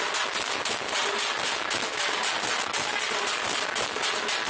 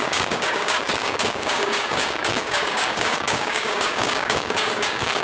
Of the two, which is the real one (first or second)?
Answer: first